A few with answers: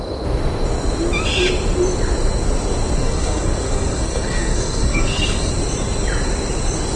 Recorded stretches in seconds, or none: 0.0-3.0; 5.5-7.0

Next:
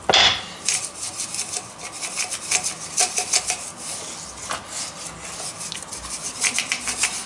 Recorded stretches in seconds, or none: 0.0-7.3

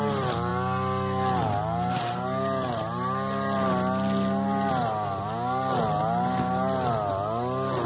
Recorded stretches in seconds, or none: 0.0-7.9